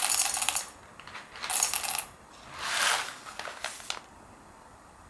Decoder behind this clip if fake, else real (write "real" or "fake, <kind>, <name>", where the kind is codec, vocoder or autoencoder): real